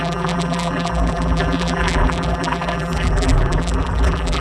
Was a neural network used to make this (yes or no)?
yes